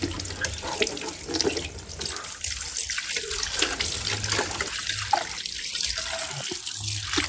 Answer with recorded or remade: recorded